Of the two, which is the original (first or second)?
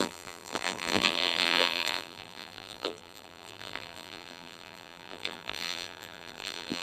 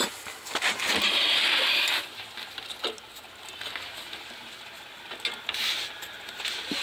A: second